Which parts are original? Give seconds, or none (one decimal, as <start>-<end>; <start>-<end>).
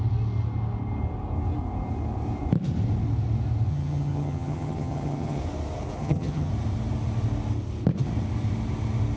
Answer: 0.0-3.7; 5.4-6.0; 6.5-9.2